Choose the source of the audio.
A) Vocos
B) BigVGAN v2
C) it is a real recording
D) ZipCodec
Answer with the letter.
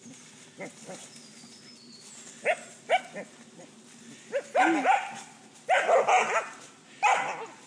C